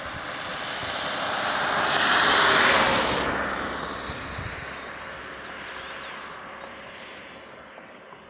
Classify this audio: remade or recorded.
recorded